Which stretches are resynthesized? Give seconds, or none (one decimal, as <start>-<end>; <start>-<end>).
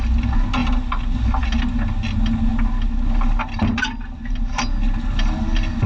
none